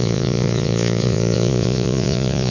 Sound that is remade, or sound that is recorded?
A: remade